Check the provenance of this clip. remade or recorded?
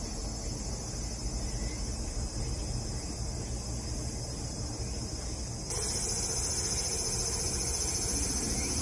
recorded